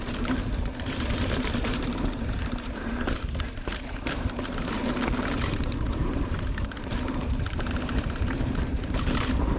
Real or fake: fake